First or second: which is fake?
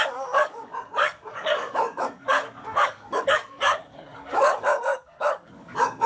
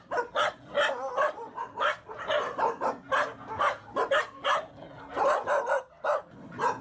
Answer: first